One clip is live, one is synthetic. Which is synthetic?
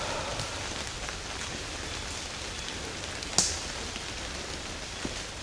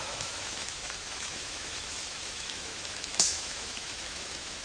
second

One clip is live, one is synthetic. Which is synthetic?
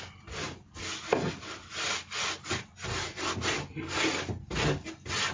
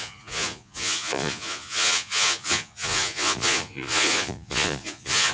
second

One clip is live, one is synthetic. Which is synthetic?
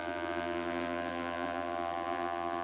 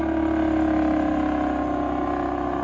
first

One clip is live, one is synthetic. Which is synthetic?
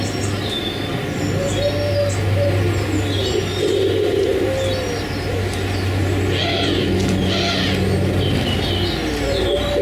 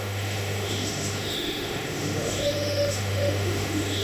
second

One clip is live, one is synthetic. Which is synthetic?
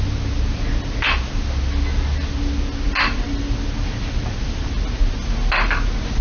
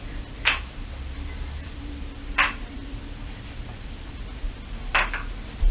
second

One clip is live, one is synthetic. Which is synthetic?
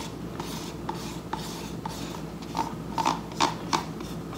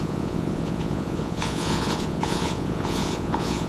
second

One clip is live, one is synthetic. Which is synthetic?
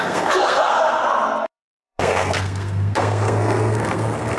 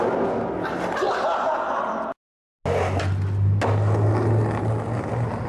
first